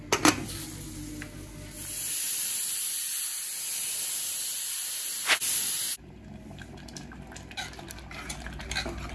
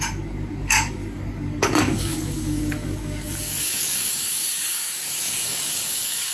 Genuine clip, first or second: first